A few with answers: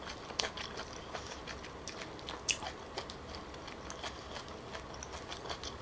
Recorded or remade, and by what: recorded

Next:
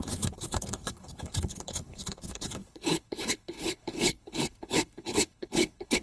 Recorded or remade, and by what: remade, codec, HILCodec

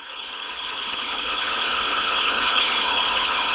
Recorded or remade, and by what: remade, codec, HILCodec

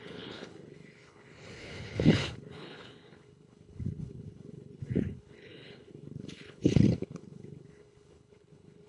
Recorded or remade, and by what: remade, codec, HILCodec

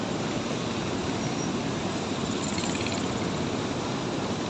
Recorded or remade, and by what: recorded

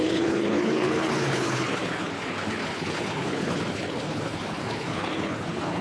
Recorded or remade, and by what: remade, codec, HILCodec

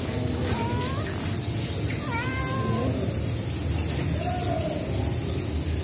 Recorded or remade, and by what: recorded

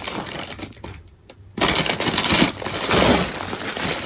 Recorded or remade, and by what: recorded